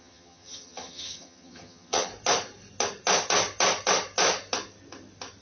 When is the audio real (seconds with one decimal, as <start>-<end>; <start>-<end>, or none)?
2.1-5.4